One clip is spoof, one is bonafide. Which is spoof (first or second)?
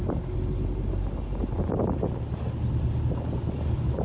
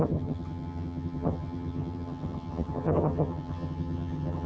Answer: second